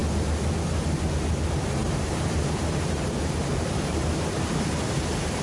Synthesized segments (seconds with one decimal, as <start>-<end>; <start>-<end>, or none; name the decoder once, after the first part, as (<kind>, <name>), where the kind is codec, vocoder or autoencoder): 1.8-5.0 (vocoder, BigVGAN v2)